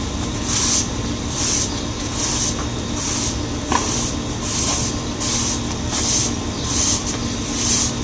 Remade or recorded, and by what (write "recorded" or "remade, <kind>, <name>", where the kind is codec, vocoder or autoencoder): recorded